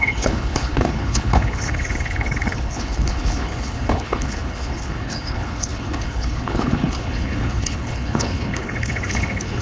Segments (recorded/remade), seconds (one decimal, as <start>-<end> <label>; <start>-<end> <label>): 0.0-9.6 remade

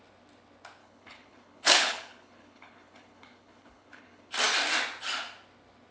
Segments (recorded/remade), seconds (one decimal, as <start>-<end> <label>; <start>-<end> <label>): 0.0-0.8 recorded; 0.8-4.3 remade; 4.3-5.9 recorded

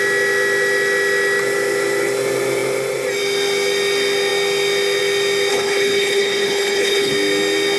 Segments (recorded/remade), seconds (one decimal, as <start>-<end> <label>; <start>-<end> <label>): 0.0-5.5 recorded; 5.5-7.1 remade; 7.1-7.8 recorded